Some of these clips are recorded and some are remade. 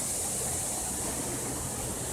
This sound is recorded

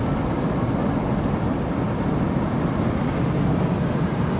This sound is recorded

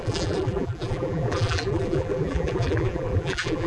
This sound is remade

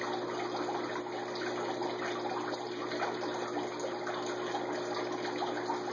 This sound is recorded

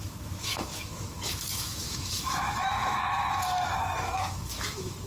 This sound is remade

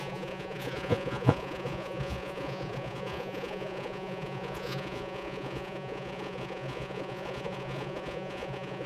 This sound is remade